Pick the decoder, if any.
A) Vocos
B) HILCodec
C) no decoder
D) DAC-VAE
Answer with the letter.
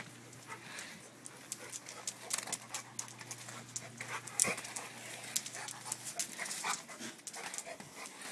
C